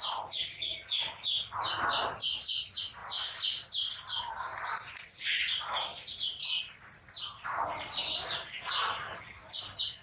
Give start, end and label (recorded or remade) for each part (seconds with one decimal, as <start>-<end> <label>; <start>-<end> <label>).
0.0-10.0 recorded